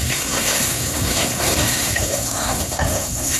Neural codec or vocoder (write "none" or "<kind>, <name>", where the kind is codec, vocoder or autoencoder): codec, SNAC